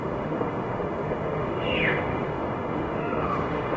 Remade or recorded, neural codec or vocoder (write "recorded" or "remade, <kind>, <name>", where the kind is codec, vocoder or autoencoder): remade, autoencoder, DAC-VAE